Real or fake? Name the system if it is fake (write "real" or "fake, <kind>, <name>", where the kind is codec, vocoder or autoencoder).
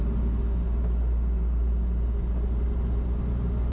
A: real